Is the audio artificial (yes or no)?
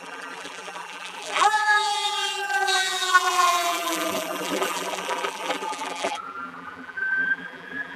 yes